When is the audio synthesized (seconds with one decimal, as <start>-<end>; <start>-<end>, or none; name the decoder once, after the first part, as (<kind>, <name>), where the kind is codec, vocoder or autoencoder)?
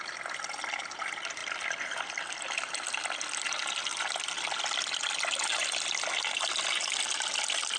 none